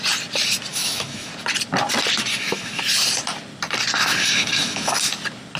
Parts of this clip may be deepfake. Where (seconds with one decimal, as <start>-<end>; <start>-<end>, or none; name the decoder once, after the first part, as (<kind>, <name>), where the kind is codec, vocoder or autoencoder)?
0.7-1.3 (autoencoder, DAC-VAE); 2.3-2.8; 4.0-5.0